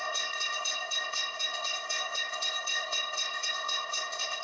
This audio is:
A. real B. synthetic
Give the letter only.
B